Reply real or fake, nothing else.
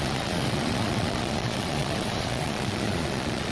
fake